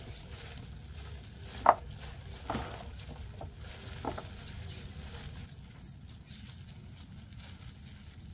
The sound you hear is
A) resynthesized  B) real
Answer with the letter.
B